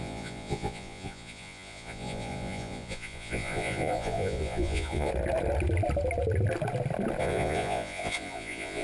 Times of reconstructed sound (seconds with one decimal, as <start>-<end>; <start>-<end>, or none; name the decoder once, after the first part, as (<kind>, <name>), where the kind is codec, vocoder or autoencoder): 0.0-5.1 (vocoder, Vocos); 7.2-8.8